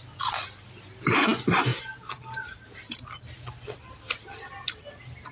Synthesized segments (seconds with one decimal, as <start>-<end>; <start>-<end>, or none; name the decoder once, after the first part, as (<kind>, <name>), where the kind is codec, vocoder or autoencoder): none